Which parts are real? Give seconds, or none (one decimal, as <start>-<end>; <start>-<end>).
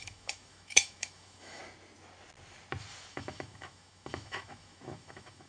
1.6-3.1